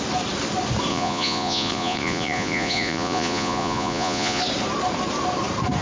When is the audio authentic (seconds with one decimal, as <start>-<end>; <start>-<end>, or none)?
0.0-0.9; 4.4-5.8